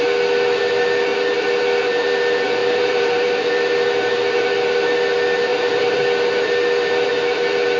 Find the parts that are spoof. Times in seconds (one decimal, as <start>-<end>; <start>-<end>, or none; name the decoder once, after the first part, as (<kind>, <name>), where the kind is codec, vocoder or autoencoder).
2.6-3.3 (vocoder, BigVGAN v2); 5.5-6.0